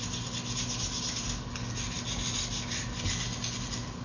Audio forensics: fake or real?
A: real